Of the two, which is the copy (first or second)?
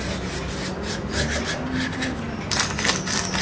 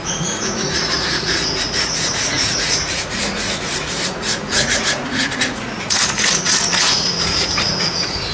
second